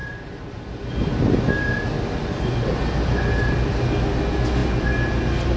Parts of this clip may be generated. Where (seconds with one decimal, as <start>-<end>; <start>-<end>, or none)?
none